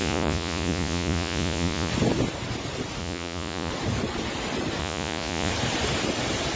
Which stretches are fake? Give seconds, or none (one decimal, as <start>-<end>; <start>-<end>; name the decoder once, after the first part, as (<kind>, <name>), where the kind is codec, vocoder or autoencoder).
0.0-1.9 (vocoder, Vocos); 3.0-3.7; 4.8-5.5